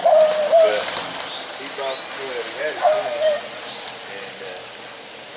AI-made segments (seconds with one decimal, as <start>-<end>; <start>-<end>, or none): 0.0-1.3; 4.0-4.7